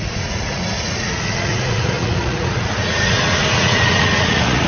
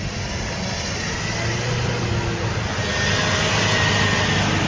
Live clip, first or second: second